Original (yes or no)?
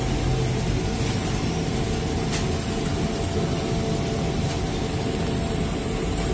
yes